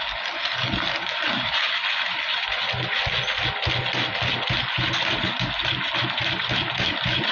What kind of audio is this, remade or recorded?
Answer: recorded